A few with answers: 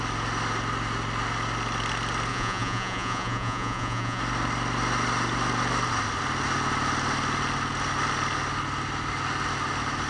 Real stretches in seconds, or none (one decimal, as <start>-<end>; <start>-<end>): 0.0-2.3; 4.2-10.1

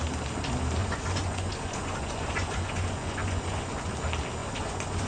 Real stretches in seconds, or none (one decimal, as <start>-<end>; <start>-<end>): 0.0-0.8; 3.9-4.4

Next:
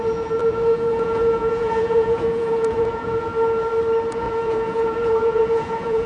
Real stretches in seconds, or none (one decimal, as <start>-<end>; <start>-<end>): 3.3-4.1

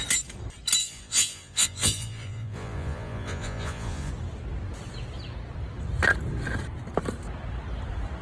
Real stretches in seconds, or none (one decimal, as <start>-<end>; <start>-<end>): 0.0-0.8; 4.1-8.2

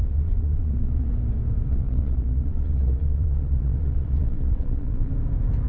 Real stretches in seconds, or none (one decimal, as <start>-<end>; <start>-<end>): 1.1-1.7; 5.1-5.7